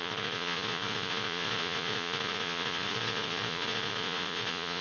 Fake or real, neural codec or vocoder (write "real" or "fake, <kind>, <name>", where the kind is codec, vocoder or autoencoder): fake, vocoder, Vocos